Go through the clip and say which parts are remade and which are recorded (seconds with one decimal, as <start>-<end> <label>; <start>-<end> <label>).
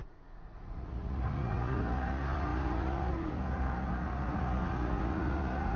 0.0-5.8 remade